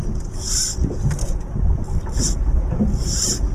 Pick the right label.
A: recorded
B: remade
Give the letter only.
A